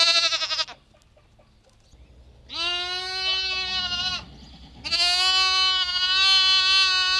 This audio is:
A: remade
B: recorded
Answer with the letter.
B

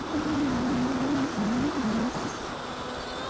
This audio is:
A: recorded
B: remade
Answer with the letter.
A